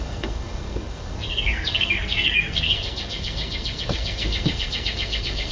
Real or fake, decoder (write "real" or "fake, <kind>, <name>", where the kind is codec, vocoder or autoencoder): fake, codec, SNAC